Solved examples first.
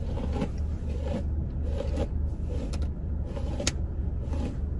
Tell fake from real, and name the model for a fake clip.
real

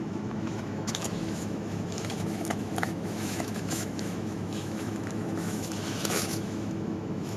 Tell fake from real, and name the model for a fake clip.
fake, autoencoder, DAC-VAE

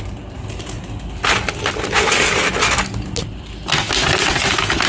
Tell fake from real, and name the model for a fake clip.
real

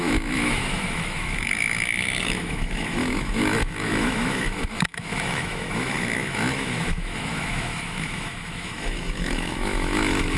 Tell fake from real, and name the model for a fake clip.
fake, autoencoder, DAC-VAE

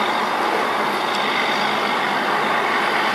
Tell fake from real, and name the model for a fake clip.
real